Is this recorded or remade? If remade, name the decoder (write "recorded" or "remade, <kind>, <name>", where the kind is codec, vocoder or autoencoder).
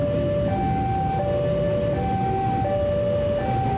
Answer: recorded